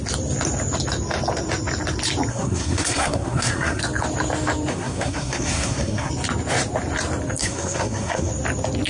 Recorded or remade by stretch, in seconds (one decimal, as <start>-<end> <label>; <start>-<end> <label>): 0.0-2.3 recorded; 2.3-3.8 remade; 3.8-4.7 recorded; 4.7-6.1 remade; 6.1-7.4 recorded; 7.4-8.3 remade; 8.3-8.9 recorded